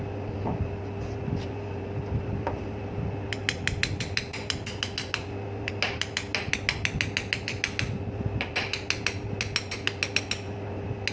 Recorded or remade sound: recorded